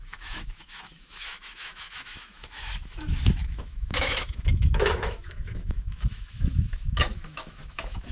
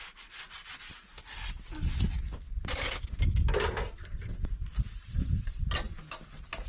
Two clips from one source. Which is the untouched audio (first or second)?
second